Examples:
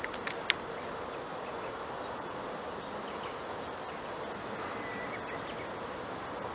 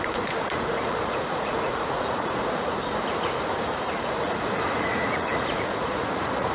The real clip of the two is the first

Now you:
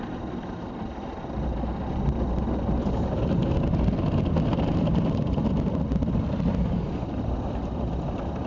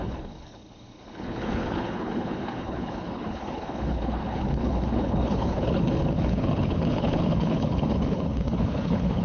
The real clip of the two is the first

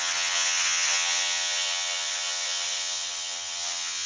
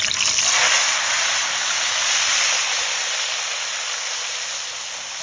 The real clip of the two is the second